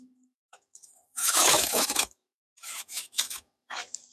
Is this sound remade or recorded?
remade